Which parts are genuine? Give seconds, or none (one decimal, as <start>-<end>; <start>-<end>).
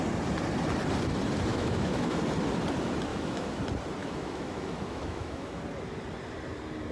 0.0-1.5; 2.2-3.1; 3.6-4.0; 5.6-6.9